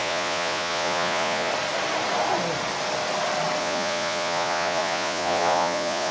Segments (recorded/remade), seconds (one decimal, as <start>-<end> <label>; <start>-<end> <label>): 0.0-1.5 remade; 1.5-3.6 recorded; 3.6-6.1 remade